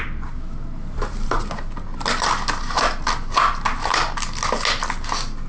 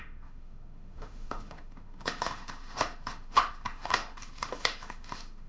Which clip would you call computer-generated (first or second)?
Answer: second